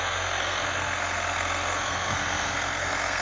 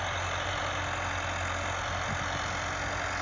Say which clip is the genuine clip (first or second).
second